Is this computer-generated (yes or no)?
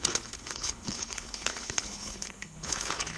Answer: yes